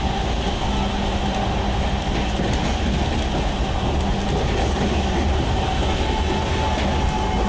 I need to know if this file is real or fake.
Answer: real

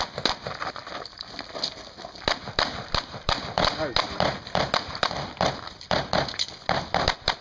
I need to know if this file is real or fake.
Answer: real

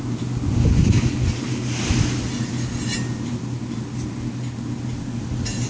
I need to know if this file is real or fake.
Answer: real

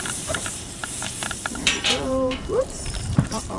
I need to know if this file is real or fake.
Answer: fake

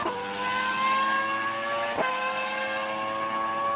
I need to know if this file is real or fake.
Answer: real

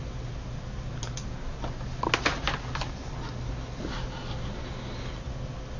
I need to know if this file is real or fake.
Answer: real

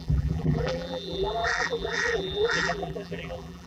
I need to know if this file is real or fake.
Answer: fake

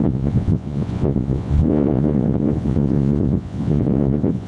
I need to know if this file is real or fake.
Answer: fake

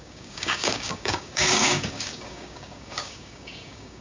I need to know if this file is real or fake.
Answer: fake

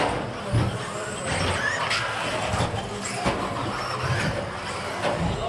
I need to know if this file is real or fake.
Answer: real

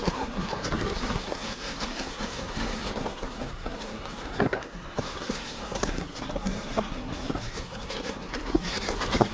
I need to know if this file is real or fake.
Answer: fake